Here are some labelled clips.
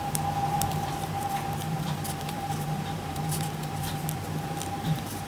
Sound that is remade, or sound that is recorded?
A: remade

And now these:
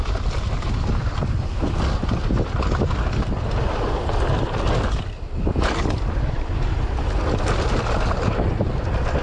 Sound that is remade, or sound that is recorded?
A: remade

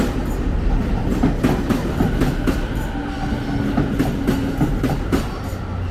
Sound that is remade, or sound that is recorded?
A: recorded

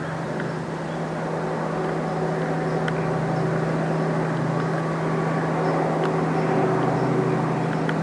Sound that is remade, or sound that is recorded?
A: recorded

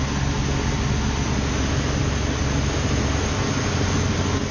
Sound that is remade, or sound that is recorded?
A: recorded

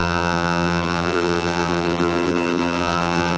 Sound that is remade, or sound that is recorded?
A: remade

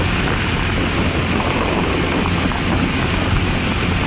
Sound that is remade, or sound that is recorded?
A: recorded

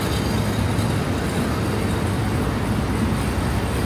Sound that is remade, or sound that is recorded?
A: recorded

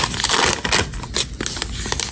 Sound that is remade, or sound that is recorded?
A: recorded